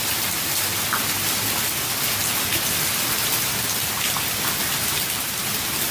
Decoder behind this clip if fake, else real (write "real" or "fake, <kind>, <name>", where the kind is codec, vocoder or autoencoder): real